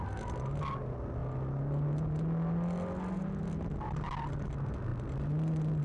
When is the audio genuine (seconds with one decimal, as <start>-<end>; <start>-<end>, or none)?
0.0-5.8